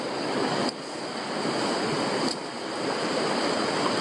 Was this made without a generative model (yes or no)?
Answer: yes